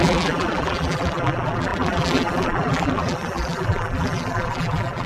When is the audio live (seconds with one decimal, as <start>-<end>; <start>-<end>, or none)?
none